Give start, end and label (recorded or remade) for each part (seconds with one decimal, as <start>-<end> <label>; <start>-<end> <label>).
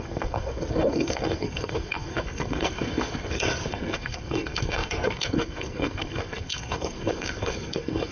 0.0-8.1 remade